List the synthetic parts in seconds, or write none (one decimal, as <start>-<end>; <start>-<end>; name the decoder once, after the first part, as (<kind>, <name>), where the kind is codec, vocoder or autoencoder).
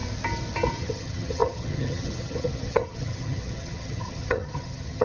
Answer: 0.7-5.0 (vocoder, HiFi-GAN)